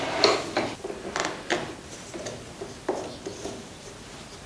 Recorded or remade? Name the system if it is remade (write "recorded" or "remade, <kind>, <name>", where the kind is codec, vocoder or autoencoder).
recorded